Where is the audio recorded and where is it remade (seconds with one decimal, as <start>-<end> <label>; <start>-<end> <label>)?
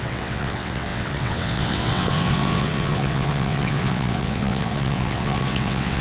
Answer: 0.0-6.0 remade